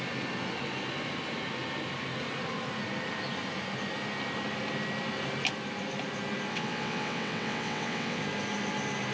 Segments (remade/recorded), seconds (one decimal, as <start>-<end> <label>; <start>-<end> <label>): 0.0-6.5 recorded; 6.5-8.2 remade; 8.2-9.1 recorded